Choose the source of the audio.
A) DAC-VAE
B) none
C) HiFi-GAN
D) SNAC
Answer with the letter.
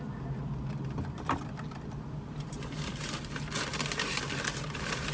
B